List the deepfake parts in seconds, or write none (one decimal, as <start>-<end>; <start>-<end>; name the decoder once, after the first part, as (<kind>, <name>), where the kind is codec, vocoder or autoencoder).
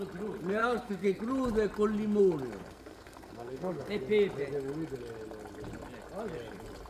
0.6-1.2 (codec, SNAC); 2.6-4.0